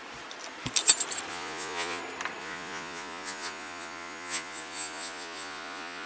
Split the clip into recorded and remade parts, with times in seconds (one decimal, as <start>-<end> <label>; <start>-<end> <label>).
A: 0.0-1.3 recorded; 1.3-2.0 remade; 2.0-2.4 recorded; 2.4-6.1 remade